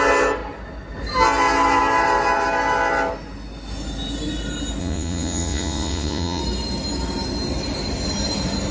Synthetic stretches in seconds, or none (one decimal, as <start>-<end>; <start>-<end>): 4.8-6.4